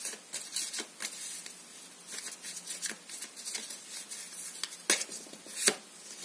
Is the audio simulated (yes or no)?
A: no